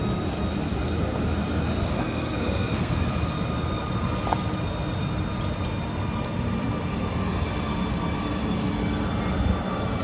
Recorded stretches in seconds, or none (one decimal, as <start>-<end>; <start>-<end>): 0.0-1.9; 3.0-10.0